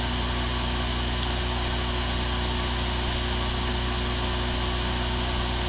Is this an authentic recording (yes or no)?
yes